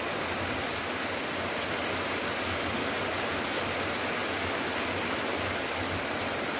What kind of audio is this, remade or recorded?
recorded